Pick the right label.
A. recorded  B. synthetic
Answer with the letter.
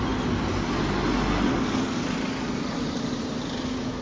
A